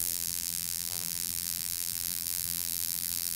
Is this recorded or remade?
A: remade